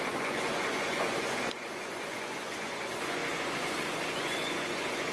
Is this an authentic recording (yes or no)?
no